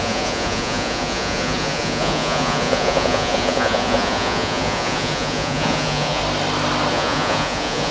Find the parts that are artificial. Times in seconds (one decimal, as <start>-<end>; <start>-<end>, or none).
0.0-6.2; 6.9-7.9